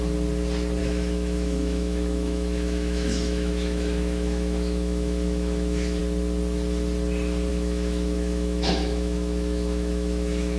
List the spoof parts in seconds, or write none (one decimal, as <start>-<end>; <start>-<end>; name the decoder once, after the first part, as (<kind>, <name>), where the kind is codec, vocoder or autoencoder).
0.8-6.0 (autoencoder, DAC-VAE); 7.5-10.6